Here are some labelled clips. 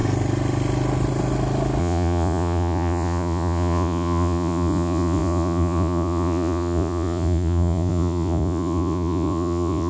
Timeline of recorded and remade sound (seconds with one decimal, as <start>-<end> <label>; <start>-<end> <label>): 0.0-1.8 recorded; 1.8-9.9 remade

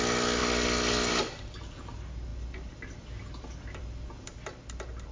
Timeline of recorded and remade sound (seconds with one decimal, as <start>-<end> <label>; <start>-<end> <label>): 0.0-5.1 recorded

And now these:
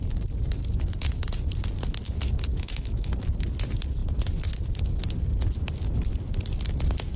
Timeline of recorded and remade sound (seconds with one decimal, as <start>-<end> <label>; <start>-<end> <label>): 0.0-2.5 recorded; 2.5-3.1 remade; 3.1-7.2 recorded

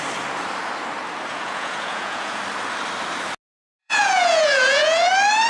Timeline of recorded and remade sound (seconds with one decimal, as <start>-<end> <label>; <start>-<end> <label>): 0.0-1.3 recorded; 1.3-2.4 remade; 2.4-3.8 recorded; 3.8-5.1 remade; 5.1-5.5 recorded